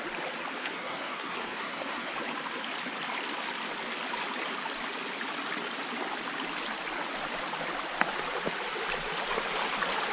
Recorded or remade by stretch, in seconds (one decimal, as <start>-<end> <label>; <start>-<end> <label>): 0.0-0.6 recorded; 0.6-2.1 remade; 2.1-10.1 recorded